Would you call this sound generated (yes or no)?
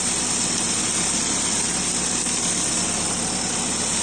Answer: no